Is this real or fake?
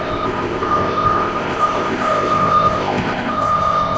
fake